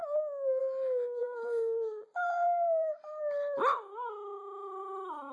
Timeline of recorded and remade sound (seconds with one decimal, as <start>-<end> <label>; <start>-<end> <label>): 0.0-1.2 recorded; 1.2-3.2 remade; 3.2-4.3 recorded; 4.3-4.8 remade; 4.8-5.3 recorded